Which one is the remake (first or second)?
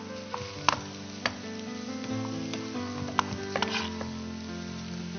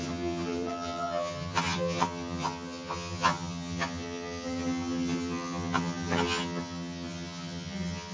second